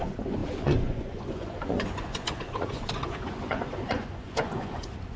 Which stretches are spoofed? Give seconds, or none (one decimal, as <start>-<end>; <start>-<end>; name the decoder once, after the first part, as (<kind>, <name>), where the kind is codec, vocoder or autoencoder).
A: 0.0-5.2 (vocoder, Vocos)